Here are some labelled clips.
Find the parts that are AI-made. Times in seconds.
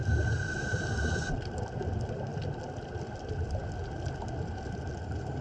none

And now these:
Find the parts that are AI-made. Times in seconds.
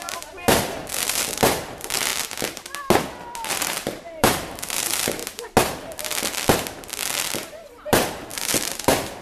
0.0-2.1 (vocoder, BigVGAN v2); 3.5-5.2; 6.9-9.2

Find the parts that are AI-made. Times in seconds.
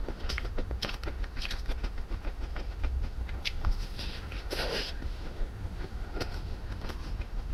0.0-7.5 (autoencoder, DAC-VAE)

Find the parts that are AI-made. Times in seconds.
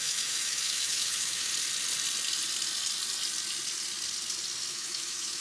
0.0-1.5 (autoencoder, DAC-VAE); 4.7-5.4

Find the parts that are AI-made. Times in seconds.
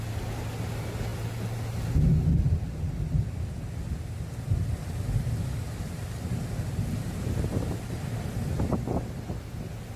none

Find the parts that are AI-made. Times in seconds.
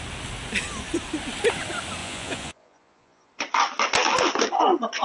2.0-3.3 (vocoder, Vocos)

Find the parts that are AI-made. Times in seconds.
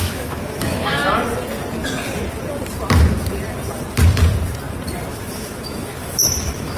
0.0-1.0 (autoencoder, DAC-VAE); 5.1-6.8